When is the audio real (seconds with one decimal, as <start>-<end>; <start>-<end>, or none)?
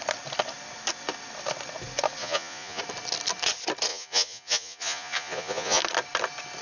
0.0-2.2; 2.8-3.9; 5.8-6.6